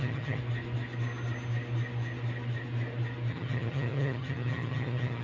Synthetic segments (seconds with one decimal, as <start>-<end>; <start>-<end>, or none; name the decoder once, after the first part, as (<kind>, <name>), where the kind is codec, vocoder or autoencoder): 0.0-0.4 (vocoder, HiFi-GAN); 3.3-5.2